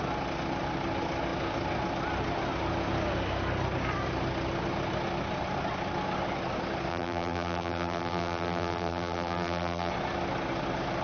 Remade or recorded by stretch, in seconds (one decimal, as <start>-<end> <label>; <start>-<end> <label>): 0.0-6.9 recorded; 6.9-9.9 remade; 9.9-11.0 recorded